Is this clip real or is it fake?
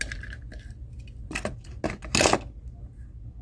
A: real